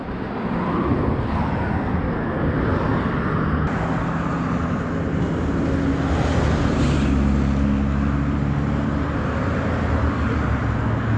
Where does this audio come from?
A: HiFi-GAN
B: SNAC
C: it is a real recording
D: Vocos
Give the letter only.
C